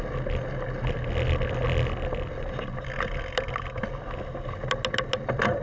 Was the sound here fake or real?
real